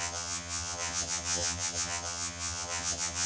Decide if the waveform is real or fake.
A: fake